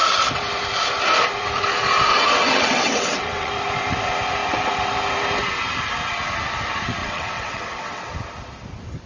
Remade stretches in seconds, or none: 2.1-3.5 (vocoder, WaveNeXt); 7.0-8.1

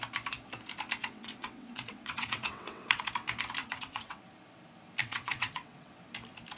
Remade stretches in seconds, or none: 1.0-3.1 (vocoder, WaveNeXt); 3.6-4.2; 5.0-6.0

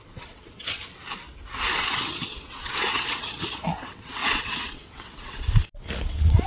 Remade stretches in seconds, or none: 0.0-0.9 (vocoder, WaveNeXt); 1.8-6.5

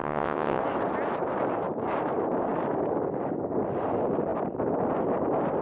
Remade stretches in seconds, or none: 0.0-0.6 (vocoder, WaveNeXt)

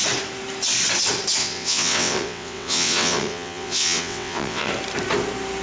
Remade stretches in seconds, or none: 1.4-4.7 (vocoder, WaveNeXt)

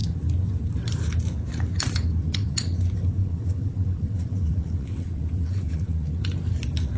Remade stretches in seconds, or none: 2.2-2.8 (vocoder, WaveNeXt); 3.2-6.2